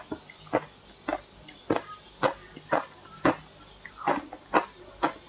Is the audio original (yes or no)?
yes